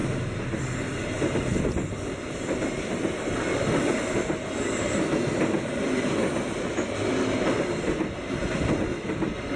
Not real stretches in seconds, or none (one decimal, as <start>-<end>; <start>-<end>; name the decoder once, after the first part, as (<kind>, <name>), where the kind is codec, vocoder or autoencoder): none